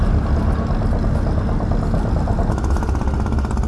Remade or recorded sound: recorded